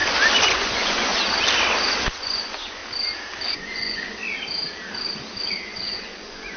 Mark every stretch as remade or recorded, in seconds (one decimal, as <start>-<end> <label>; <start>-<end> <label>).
0.0-0.5 recorded; 0.5-1.1 remade; 1.1-2.2 recorded; 2.2-2.8 remade; 2.8-3.5 recorded; 3.5-4.2 remade; 4.2-5.6 recorded; 5.6-6.6 remade